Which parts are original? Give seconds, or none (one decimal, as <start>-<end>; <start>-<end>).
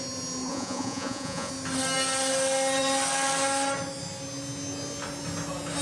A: 0.0-0.5; 1.5-5.8